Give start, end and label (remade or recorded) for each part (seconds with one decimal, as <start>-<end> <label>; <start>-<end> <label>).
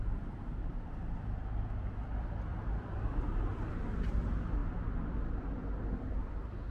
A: 0.0-3.7 remade; 3.7-6.7 recorded